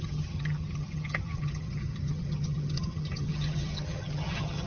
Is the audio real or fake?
fake